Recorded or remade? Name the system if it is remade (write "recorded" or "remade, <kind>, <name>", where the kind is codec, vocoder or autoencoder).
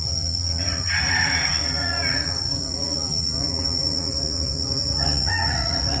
remade, vocoder, Vocos